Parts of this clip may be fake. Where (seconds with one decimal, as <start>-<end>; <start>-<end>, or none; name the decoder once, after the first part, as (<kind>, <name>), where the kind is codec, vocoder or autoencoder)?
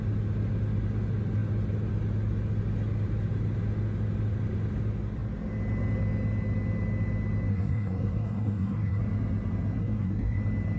7.5-9.0 (codec, SNAC); 9.8-10.4